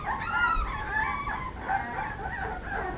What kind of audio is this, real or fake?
real